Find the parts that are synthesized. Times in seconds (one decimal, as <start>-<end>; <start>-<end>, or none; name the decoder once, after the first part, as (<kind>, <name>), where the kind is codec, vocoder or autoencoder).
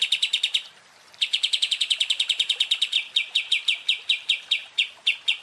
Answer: 0.0-5.4 (vocoder, BigVGAN v2)